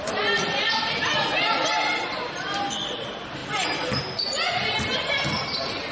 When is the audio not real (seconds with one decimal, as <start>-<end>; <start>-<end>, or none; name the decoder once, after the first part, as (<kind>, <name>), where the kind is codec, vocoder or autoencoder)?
none